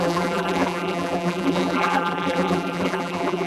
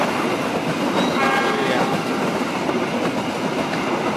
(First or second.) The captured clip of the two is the second